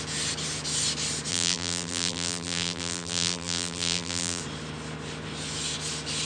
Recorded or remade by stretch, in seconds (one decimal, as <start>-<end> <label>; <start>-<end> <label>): 0.0-1.3 recorded; 1.3-4.4 remade; 4.4-6.3 recorded

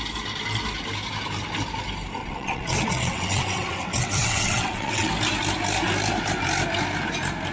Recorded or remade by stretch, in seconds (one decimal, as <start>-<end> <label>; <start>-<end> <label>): 0.0-2.2 recorded; 2.2-5.1 remade; 5.1-7.5 recorded

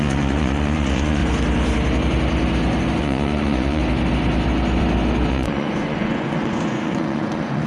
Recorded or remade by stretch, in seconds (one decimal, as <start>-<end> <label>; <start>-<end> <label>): 0.0-1.2 remade; 1.2-3.0 recorded; 3.0-3.8 remade; 3.8-5.3 recorded; 5.3-7.7 remade

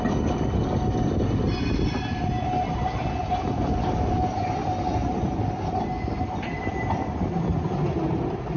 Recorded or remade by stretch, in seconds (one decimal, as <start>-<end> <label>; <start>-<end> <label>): 0.0-8.6 recorded

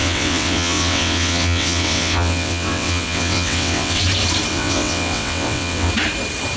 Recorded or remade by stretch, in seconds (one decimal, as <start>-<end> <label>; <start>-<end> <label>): 0.0-4.0 remade; 4.0-4.5 recorded; 4.5-5.9 remade; 5.9-6.6 recorded

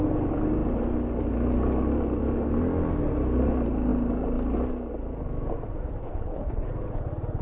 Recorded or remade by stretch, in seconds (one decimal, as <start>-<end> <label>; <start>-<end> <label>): 0.0-6.0 recorded; 6.0-6.7 remade; 6.7-7.4 recorded

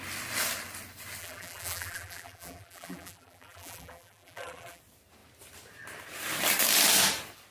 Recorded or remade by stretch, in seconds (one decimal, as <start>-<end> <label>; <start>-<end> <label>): 0.0-1.2 recorded; 1.2-4.8 remade; 4.8-7.5 recorded